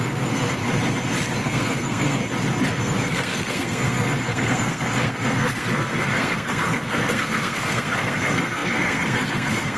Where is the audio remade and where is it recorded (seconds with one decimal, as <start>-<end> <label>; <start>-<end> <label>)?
0.0-0.6 remade; 0.6-1.4 recorded; 1.4-2.2 remade; 2.2-2.8 recorded; 2.8-9.8 remade